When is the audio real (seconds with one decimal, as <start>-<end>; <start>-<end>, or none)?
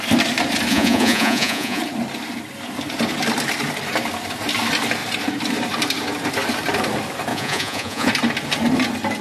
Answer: 0.0-0.7; 1.8-7.3; 8.1-9.2